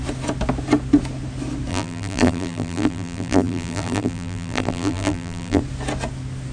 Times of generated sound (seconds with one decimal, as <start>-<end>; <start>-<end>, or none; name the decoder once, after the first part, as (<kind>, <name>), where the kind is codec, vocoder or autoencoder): 1.7-5.6 (vocoder, BigVGAN v2)